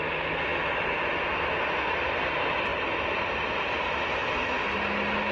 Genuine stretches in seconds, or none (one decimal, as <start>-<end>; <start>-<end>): 0.0-5.3

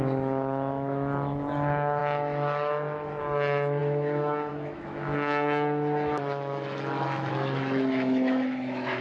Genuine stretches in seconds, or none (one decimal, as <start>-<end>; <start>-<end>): none

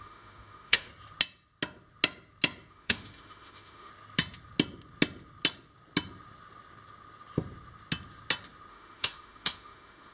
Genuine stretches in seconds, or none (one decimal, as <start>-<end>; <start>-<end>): 0.9-2.7; 3.9-8.7

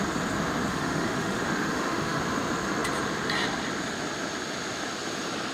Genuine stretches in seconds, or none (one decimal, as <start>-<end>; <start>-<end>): 0.0-0.7; 2.2-5.5

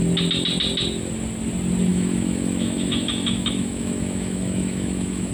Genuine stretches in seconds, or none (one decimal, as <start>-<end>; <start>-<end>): 0.0-1.9

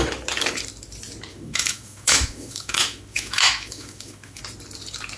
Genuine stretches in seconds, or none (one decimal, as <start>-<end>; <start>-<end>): 0.0-1.3; 4.4-5.2

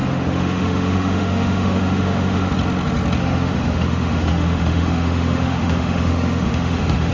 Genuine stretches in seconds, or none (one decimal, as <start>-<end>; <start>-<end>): 2.5-3.2